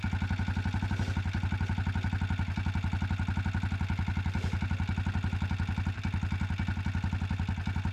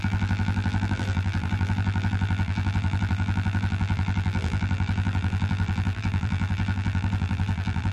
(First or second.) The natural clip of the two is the first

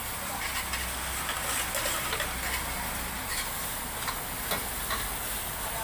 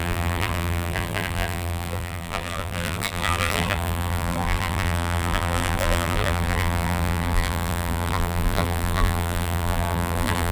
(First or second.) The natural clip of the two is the first